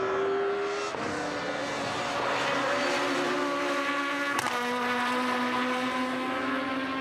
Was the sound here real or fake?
real